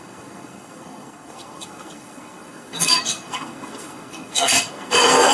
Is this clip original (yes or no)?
no